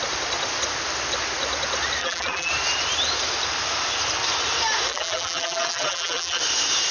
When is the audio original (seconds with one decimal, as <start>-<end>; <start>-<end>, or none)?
0.0-2.0; 2.5-4.9; 6.4-6.9